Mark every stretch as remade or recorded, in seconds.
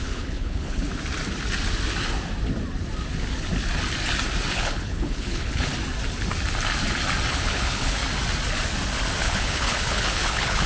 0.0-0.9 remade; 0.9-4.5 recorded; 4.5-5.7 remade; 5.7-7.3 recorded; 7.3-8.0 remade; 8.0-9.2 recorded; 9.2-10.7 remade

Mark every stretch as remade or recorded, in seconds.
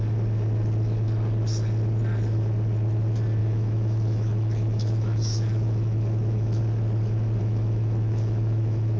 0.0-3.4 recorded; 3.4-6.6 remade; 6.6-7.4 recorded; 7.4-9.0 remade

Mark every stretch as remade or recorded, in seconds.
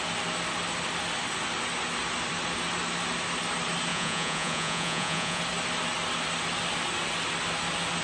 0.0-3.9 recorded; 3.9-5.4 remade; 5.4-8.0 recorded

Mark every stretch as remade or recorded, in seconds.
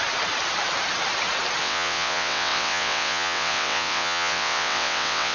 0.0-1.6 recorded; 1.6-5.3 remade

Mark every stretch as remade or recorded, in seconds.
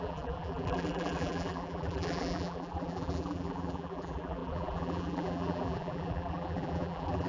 0.0-7.3 remade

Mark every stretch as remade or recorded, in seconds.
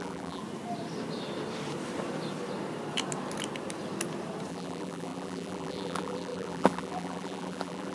0.0-0.4 remade; 0.4-4.5 recorded; 4.5-7.9 remade